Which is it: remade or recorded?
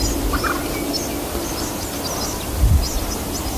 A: recorded